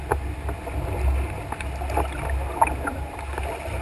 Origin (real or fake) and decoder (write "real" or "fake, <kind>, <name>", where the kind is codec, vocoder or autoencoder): real